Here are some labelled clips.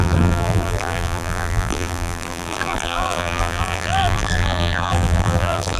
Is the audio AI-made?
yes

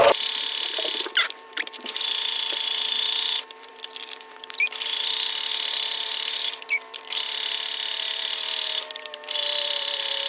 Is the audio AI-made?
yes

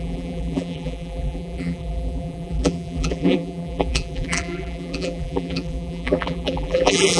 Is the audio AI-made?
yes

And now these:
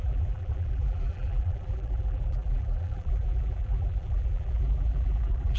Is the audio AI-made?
yes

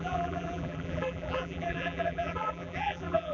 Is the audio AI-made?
yes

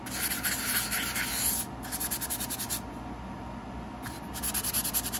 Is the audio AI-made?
no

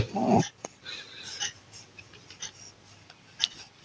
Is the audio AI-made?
no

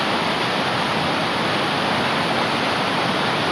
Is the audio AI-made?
no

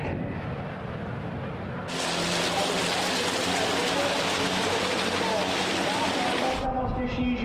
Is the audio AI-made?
no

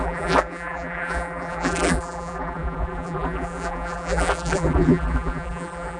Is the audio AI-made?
yes